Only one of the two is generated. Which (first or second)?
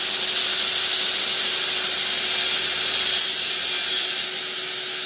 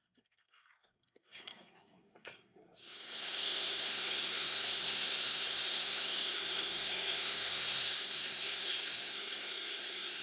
second